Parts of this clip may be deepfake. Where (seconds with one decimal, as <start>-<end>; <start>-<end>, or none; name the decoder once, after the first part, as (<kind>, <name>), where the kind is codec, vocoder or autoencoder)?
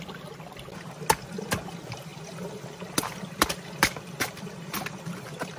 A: 2.1-5.6 (vocoder, BigVGAN v2)